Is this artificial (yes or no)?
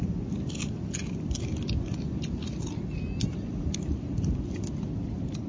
no